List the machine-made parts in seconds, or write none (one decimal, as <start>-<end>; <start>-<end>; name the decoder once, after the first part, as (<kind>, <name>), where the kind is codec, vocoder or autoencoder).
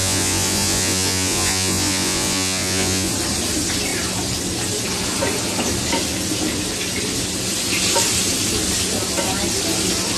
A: 0.0-3.1 (vocoder, Vocos)